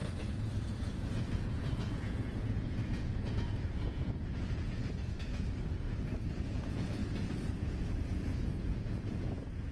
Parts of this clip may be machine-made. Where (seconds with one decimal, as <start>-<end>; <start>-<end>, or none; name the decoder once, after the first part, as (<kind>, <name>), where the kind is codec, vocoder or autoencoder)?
0.0-7.0 (vocoder, Vocos); 7.6-9.7